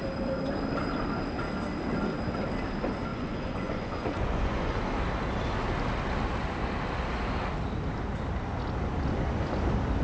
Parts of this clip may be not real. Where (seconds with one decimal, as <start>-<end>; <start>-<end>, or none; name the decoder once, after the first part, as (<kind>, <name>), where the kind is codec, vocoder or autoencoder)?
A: 3.1-4.8 (vocoder, Vocos)